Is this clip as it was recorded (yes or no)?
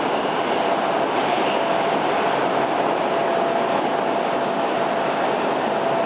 yes